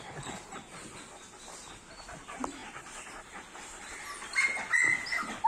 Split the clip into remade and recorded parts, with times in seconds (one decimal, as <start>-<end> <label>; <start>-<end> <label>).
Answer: 0.0-5.5 recorded